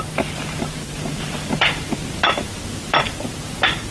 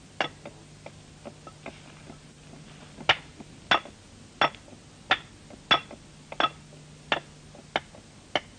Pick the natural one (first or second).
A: second